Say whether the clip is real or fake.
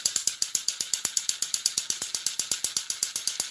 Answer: real